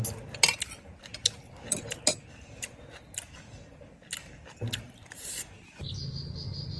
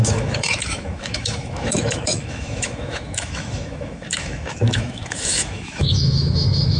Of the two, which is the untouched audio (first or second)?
first